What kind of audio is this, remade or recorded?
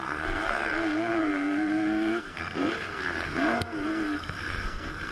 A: remade